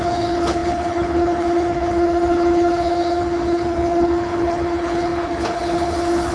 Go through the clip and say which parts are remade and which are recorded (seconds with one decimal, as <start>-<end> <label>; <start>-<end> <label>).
0.0-6.3 remade